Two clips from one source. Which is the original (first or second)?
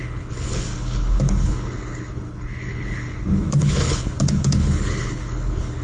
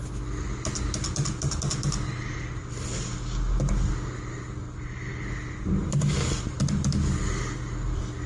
second